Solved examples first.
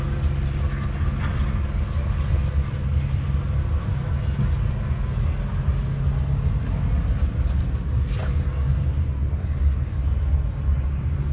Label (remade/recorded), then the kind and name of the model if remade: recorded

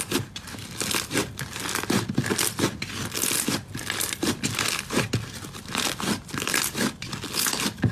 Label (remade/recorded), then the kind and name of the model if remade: recorded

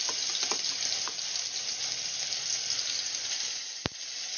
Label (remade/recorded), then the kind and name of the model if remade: recorded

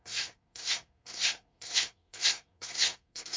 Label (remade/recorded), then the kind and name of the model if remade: remade, codec, SNAC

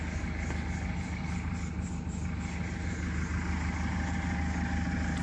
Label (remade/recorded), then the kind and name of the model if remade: recorded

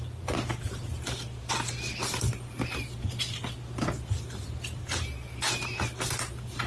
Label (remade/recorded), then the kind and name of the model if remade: recorded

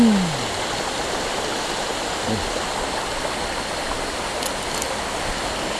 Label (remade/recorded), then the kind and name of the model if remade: recorded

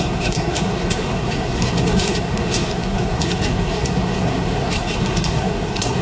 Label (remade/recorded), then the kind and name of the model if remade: remade, codec, SNAC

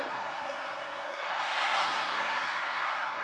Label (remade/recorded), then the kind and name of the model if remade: remade, codec, SNAC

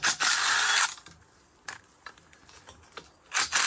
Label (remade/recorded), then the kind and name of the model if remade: recorded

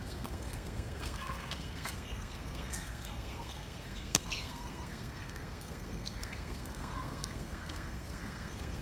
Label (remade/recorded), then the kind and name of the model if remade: remade, codec, SNAC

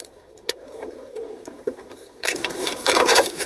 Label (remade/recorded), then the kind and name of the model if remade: remade, codec, SNAC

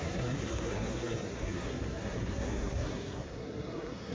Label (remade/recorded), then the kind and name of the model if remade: remade, codec, SNAC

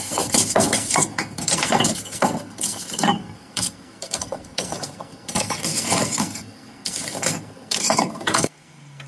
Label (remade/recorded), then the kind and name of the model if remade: remade, codec, SNAC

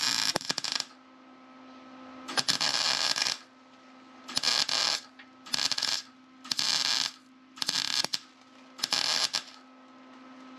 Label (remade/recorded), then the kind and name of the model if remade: recorded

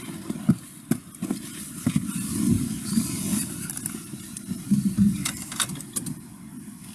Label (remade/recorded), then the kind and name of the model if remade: recorded